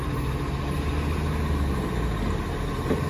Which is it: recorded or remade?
recorded